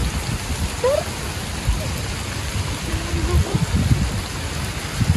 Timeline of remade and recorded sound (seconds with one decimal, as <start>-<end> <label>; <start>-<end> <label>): 0.0-3.1 remade; 3.1-5.2 recorded